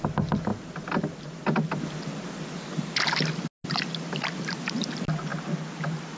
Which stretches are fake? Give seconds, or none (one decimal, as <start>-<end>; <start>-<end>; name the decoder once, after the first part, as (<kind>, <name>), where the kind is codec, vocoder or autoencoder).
none